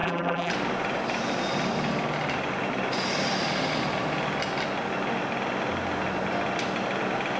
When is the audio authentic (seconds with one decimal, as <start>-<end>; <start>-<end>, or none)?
0.5-7.4